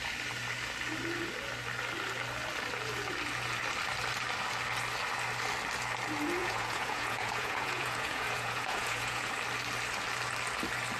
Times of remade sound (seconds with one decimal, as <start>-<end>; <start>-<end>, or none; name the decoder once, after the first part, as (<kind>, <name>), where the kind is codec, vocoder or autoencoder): 6.4-9.3 (vocoder, Vocos)